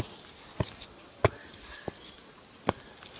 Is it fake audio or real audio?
real